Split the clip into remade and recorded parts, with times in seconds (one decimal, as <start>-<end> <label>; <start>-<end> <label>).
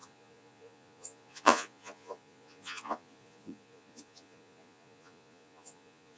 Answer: 0.0-6.2 remade